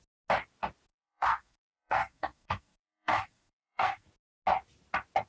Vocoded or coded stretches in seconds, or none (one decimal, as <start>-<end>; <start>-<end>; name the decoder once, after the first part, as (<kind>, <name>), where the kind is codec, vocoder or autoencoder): 0.9-4.1 (codec, SNAC)

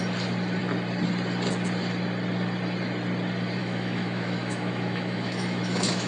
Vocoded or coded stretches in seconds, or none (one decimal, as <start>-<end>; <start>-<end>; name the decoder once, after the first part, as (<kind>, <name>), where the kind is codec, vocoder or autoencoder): 3.6-6.1 (autoencoder, DAC-VAE)

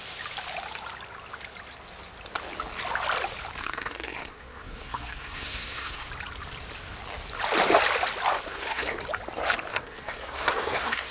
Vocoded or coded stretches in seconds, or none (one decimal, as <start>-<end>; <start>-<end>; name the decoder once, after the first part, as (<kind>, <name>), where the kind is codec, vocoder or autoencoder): 3.6-6.1 (codec, SNAC); 8.5-9.0; 9.7-11.1

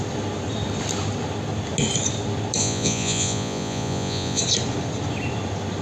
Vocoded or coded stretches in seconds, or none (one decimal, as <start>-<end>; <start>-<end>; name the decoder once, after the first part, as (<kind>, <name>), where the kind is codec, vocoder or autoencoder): 2.6-4.4 (vocoder, Vocos)

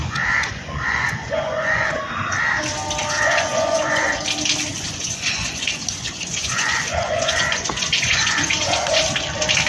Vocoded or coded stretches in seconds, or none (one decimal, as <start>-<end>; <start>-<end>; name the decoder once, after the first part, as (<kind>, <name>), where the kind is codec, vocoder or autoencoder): 0.0-2.0 (vocoder, Vocos); 3.0-4.2; 4.7-9.0

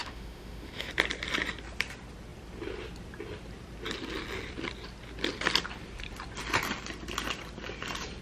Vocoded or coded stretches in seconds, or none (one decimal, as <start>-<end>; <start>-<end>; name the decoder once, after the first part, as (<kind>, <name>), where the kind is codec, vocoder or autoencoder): 0.0-0.9 (autoencoder, DAC-VAE)

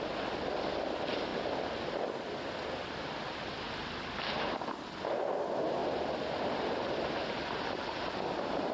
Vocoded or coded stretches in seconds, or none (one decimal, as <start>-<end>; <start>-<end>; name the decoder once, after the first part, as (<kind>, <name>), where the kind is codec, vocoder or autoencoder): none

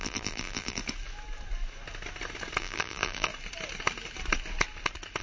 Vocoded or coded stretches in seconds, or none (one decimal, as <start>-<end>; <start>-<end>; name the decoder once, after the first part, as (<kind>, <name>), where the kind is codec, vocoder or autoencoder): 0.0-0.8 (vocoder, BigVGAN v2); 2.6-3.3